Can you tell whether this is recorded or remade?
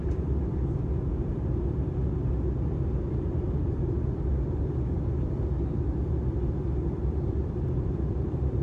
remade